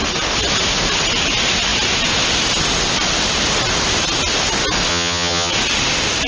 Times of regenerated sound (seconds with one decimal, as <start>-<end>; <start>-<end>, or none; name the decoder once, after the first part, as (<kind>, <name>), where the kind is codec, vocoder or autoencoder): 4.9-5.5 (vocoder, HiFi-GAN)

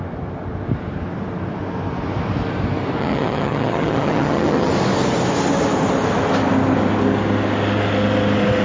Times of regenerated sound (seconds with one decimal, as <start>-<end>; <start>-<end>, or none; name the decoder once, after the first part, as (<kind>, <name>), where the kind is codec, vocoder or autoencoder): 3.0-4.7 (vocoder, HiFi-GAN)

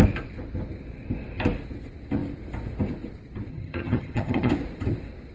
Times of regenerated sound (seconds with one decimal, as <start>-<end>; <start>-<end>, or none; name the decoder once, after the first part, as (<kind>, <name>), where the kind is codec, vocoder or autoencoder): 3.5-4.5 (vocoder, HiFi-GAN)

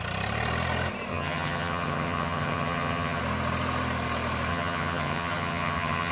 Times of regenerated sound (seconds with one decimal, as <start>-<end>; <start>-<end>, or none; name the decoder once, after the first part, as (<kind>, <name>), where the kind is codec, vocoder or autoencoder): 1.1-3.2 (vocoder, HiFi-GAN); 4.5-6.1